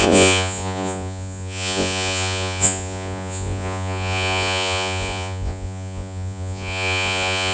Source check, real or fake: fake